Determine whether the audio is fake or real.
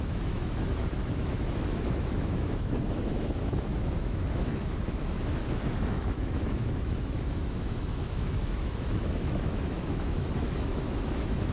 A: fake